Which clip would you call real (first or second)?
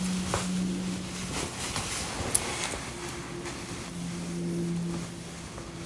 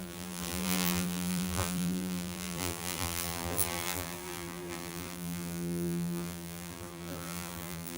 first